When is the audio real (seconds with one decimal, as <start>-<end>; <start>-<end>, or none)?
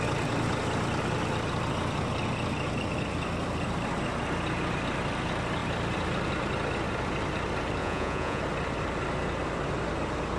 0.0-7.8; 8.4-10.4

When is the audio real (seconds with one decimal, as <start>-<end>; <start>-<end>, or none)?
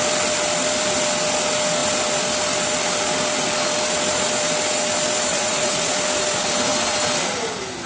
0.0-5.3; 5.9-7.9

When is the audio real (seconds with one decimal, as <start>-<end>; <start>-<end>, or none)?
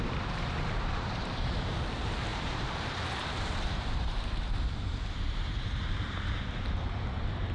none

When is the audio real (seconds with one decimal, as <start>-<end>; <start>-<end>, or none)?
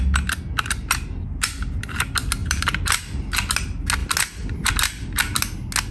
0.0-2.4; 3.4-5.9